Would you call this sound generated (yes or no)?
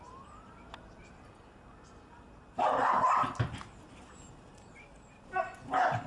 no